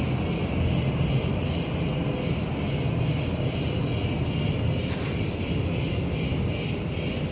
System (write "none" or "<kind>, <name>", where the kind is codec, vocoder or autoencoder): none